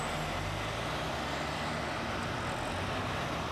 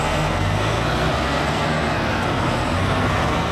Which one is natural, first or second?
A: first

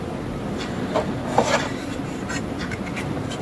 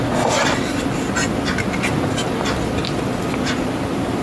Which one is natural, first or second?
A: second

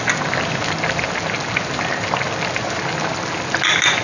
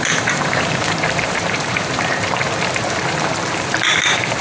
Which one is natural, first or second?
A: first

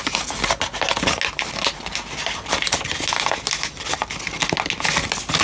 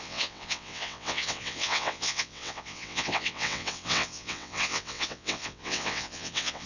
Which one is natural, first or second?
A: first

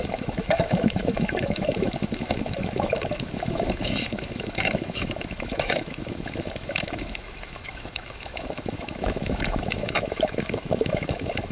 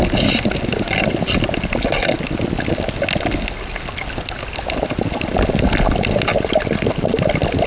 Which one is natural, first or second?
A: second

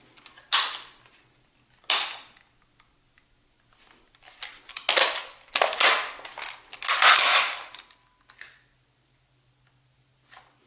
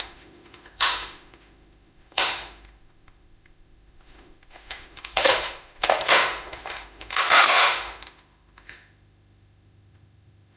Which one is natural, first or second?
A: first